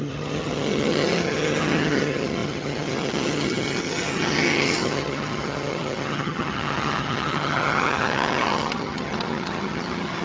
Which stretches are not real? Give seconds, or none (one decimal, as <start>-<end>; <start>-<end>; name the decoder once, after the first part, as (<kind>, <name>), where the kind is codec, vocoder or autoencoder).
0.0-10.2 (vocoder, HiFi-GAN)